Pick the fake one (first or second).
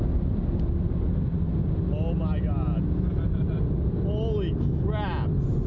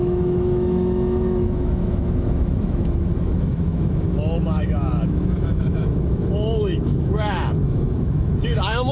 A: second